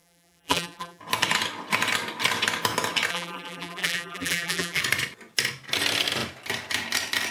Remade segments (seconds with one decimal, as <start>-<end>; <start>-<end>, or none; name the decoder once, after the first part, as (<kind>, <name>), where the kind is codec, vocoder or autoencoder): 0.0-1.0 (vocoder, BigVGAN v2); 3.1-4.8